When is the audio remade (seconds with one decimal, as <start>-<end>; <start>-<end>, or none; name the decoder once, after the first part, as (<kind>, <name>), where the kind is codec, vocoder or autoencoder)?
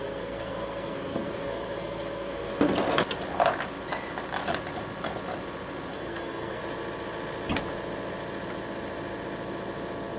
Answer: 0.0-2.5 (codec, SNAC); 5.9-6.6